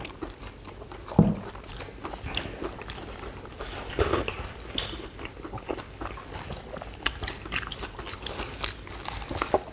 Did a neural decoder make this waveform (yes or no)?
no